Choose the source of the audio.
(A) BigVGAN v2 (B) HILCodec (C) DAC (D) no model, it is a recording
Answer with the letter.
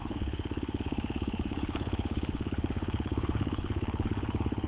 B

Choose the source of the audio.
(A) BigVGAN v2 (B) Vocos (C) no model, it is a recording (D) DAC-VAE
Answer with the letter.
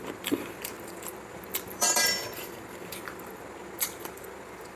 A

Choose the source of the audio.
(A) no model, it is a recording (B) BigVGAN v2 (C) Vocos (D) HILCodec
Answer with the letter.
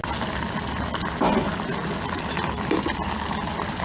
A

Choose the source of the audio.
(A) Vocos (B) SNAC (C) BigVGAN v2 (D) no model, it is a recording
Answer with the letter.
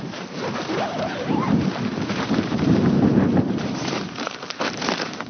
C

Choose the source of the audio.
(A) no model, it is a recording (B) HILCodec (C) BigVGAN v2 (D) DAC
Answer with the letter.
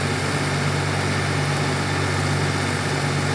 A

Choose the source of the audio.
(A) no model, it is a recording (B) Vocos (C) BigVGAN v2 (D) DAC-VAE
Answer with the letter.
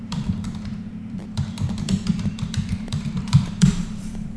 C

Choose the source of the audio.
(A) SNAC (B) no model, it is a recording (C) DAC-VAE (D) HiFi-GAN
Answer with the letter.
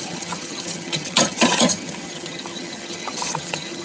D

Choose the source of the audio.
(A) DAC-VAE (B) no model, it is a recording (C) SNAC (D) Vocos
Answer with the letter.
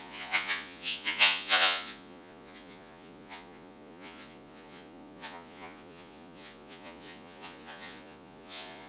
D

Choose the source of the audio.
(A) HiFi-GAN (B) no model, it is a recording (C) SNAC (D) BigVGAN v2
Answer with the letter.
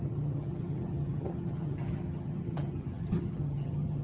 A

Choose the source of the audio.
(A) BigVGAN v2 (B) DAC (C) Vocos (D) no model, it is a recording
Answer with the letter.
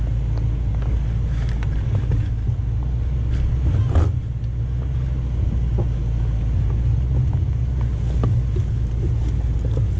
D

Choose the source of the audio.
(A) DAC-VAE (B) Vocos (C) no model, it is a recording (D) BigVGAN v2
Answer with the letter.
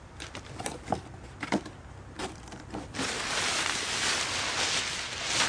C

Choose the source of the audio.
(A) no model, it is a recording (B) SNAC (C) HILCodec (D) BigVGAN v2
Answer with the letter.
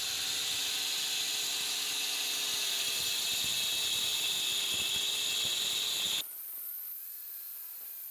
A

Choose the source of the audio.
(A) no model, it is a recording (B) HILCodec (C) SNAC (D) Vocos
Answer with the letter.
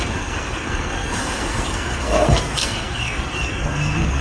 C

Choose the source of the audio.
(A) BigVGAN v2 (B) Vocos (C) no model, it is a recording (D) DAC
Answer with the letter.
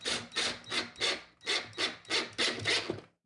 C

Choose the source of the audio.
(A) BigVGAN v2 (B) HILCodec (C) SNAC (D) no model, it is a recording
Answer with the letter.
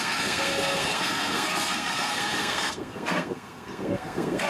C